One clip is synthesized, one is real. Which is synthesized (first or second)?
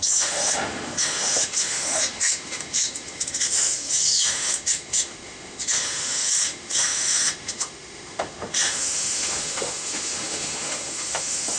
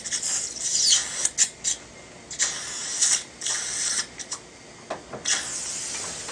first